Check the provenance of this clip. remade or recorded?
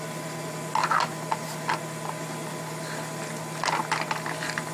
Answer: recorded